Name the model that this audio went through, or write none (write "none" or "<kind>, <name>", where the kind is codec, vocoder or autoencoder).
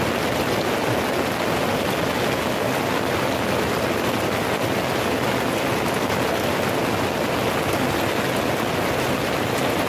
none